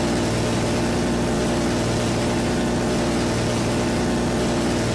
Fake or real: real